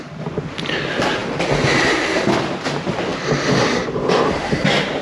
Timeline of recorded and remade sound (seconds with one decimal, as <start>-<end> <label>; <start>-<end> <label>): 0.0-5.0 recorded